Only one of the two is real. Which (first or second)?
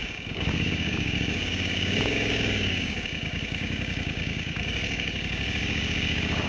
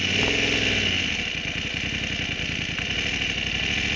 second